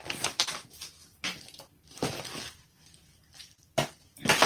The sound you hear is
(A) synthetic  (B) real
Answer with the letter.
A